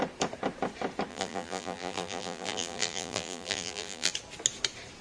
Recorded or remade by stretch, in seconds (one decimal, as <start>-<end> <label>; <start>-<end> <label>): 0.0-1.1 recorded; 1.1-4.1 remade; 4.1-5.0 recorded

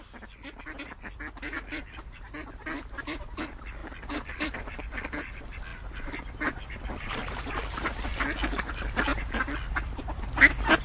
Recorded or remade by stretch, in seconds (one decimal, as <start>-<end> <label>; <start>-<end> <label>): 0.0-8.1 remade; 8.1-8.7 recorded; 8.7-10.8 remade

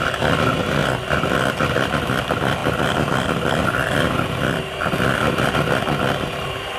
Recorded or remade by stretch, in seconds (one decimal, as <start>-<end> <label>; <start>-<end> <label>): 0.0-6.8 recorded

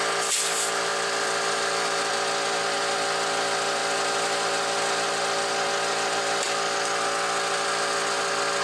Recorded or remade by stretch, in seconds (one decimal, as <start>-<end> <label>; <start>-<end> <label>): 0.0-0.9 recorded; 0.9-2.1 remade; 2.1-3.8 recorded; 3.8-5.2 remade; 5.2-8.6 recorded